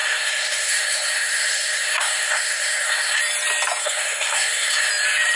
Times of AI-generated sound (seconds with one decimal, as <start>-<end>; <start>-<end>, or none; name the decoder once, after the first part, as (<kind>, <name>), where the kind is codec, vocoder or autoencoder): 0.0-3.2 (codec, SNAC); 3.8-4.9